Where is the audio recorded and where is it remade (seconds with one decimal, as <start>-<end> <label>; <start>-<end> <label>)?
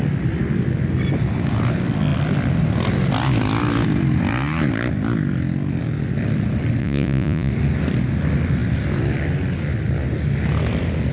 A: 0.0-6.8 recorded; 6.8-7.5 remade; 7.5-11.1 recorded